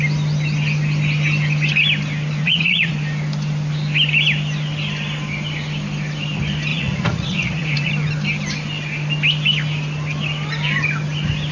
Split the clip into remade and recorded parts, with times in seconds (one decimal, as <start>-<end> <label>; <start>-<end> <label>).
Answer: 0.0-2.4 recorded; 2.4-2.9 remade; 2.9-6.7 recorded; 6.7-7.9 remade; 7.9-11.5 recorded